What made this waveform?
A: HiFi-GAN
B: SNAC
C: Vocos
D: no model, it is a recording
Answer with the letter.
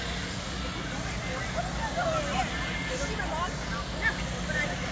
D